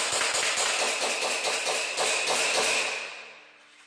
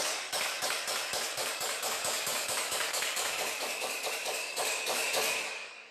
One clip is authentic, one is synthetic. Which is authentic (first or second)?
first